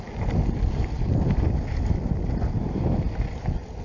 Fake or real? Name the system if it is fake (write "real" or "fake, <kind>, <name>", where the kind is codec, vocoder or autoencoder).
real